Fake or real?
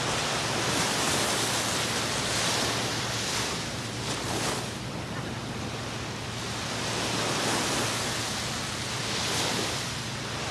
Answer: real